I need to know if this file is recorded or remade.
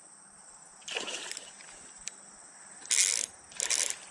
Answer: recorded